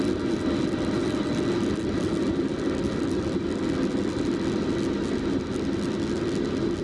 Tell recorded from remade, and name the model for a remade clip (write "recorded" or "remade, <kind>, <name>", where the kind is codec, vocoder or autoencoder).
recorded